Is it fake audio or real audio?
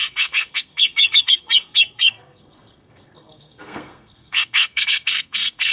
fake